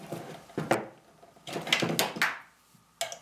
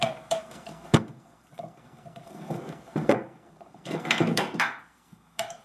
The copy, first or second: second